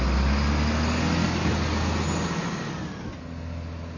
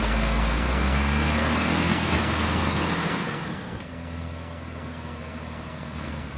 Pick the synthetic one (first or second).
second